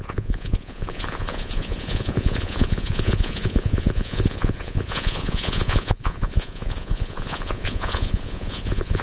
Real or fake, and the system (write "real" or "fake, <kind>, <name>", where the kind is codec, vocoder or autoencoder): fake, vocoder, Vocos